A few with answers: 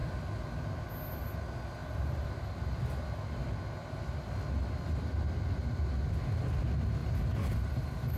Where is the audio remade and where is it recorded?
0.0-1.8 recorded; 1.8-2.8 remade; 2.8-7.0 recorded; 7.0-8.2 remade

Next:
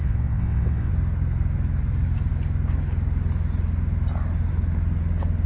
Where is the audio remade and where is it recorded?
0.0-0.9 remade; 0.9-5.5 recorded